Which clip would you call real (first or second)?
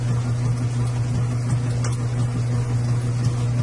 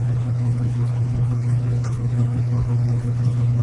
first